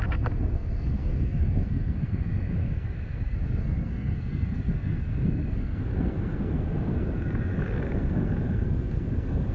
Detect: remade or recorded remade